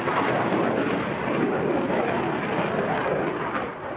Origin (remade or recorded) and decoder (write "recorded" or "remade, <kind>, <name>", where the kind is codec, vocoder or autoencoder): recorded